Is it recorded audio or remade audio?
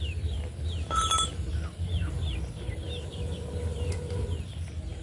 recorded